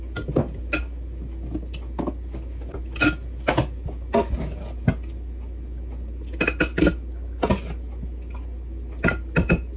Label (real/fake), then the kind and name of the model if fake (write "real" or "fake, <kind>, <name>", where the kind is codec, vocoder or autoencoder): real